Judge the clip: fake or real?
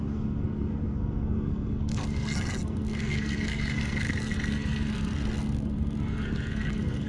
fake